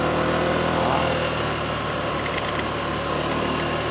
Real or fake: real